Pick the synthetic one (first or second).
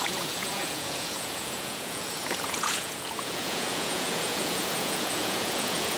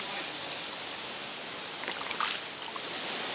first